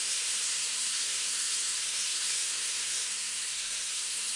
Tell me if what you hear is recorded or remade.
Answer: remade